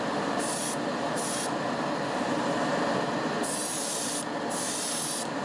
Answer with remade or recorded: recorded